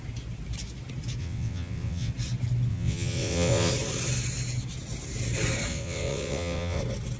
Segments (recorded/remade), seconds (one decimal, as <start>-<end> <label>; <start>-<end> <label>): 0.0-1.2 recorded; 1.2-2.1 remade; 2.1-2.7 recorded; 2.7-3.7 remade; 3.7-5.7 recorded; 5.7-6.8 remade; 6.8-7.2 recorded